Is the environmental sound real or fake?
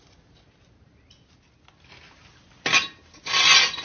real